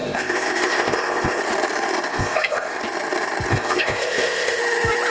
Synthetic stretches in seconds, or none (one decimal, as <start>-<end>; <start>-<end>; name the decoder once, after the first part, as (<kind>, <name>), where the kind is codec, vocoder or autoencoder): 0.0-1.4 (codec, ZipCodec); 2.1-2.8; 3.5-4.6